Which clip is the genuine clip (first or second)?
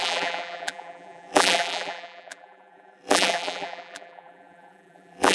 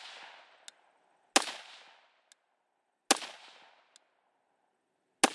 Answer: second